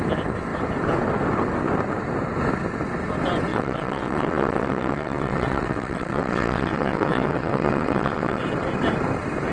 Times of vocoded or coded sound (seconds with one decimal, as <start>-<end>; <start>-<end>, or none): 3.5-8.4